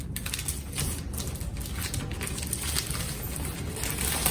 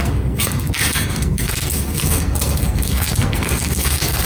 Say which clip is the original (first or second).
first